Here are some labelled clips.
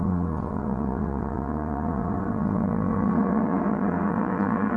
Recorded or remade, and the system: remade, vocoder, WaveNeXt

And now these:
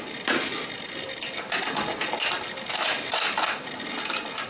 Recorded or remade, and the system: recorded